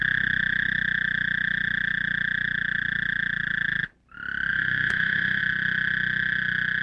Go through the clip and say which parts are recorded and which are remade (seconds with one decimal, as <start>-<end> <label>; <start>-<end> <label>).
0.0-4.5 recorded; 4.5-5.4 remade; 5.4-6.8 recorded